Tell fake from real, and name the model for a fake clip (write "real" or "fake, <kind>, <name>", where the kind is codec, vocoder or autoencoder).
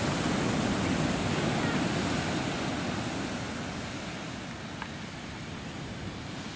real